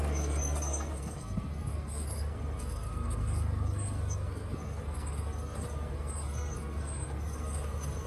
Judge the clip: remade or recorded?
remade